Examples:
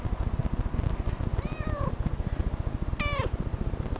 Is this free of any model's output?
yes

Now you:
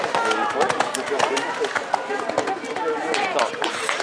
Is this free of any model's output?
yes